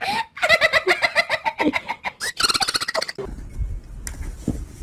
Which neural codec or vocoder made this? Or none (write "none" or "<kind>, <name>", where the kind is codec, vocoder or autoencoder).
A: none